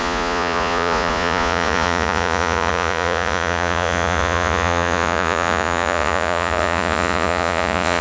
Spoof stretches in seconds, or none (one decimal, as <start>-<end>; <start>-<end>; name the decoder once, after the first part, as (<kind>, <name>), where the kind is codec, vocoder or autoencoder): 0.0-8.0 (vocoder, Vocos)